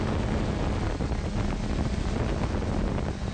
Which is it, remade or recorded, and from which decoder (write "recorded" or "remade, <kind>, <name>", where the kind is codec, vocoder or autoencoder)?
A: recorded